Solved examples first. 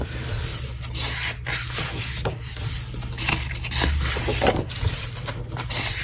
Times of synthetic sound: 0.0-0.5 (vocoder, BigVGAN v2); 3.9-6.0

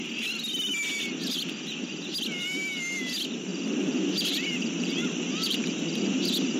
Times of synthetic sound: 3.5-6.1 (vocoder, BigVGAN v2)